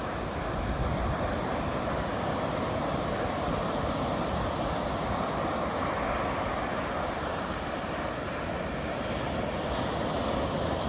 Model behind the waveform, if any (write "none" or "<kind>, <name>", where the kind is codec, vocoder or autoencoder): none